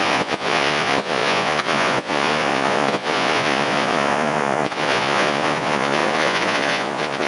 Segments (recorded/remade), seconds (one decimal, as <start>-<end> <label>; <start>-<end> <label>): 0.0-7.3 remade